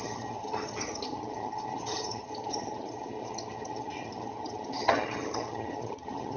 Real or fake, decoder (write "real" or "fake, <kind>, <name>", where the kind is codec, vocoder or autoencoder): fake, vocoder, HiFi-GAN